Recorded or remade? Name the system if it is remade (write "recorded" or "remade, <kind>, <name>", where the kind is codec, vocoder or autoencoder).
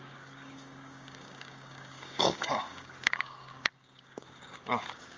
remade, codec, DAC